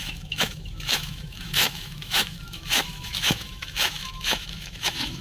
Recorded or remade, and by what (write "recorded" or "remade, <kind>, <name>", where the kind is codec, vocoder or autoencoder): remade, autoencoder, DAC-VAE